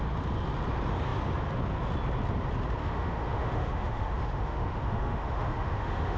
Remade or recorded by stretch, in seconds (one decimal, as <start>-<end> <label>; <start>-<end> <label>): 0.0-2.8 recorded; 2.8-6.2 remade